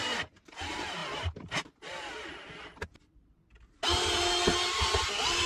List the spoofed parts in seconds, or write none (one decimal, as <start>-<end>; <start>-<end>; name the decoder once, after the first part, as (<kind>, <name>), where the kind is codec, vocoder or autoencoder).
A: none

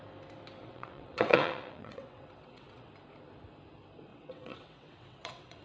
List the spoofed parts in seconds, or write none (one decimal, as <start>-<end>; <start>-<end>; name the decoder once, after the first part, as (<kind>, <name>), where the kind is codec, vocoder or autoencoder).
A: 0.6-2.9 (vocoder, WaveNeXt); 4.1-5.6

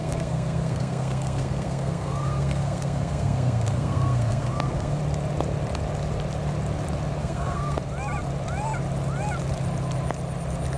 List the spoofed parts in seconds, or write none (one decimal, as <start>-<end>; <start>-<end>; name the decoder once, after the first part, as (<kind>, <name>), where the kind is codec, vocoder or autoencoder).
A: 0.0-5.0 (codec, SNAC); 7.2-7.8

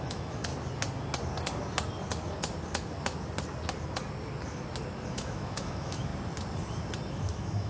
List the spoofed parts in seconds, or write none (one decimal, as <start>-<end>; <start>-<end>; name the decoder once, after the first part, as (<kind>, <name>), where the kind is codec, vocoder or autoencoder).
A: 0.0-0.5 (autoencoder, DAC-VAE); 5.1-6.1; 7.1-7.7

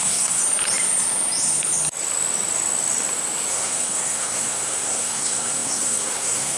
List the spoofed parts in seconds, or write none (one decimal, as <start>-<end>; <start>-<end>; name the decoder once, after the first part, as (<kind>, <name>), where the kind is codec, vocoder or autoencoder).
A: 0.0-0.4 (codec, SNAC); 3.5-6.6

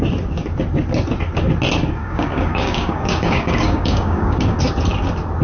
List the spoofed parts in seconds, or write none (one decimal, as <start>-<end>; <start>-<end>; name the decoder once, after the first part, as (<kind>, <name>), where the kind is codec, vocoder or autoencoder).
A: 2.0-4.6 (codec, DAC)